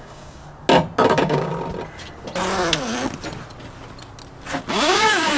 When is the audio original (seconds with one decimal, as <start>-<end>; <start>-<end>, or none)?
0.4-1.1; 1.5-4.7